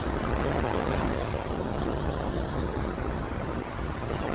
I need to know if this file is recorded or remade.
remade